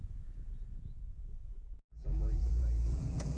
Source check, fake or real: fake